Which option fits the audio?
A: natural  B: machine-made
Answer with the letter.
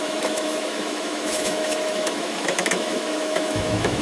B